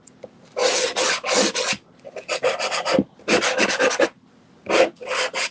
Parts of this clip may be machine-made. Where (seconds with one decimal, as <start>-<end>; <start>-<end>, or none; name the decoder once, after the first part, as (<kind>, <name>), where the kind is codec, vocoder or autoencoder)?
none